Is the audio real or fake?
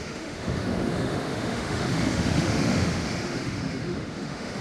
fake